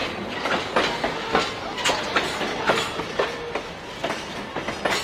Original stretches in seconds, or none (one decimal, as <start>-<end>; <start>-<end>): 0.0-5.0